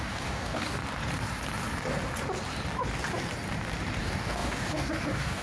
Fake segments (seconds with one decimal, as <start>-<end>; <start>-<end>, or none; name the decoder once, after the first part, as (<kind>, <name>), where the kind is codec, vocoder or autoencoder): 0.0-0.8 (codec, DAC); 4.0-5.4

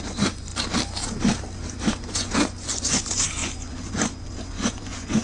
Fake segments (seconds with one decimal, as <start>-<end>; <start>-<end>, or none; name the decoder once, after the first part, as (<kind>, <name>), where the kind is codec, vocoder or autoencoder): 0.0-0.5 (vocoder, Vocos); 1.6-5.2

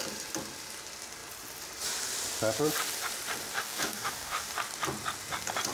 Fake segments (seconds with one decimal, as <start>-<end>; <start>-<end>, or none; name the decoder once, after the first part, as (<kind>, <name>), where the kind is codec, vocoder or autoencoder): 3.5-4.5 (codec, DAC)

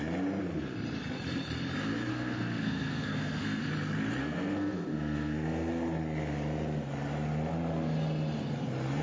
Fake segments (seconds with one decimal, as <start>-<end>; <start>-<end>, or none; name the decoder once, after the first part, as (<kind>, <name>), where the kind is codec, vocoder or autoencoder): 2.1-3.7 (codec, SNAC); 4.2-5.7

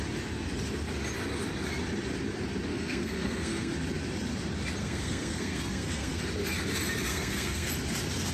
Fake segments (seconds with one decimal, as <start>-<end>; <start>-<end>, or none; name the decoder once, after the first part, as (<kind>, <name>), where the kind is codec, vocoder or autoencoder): 2.7-3.7 (codec, SNAC); 4.8-6.2; 7.1-7.7